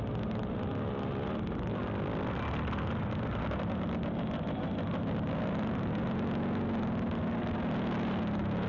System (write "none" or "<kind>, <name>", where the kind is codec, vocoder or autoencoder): none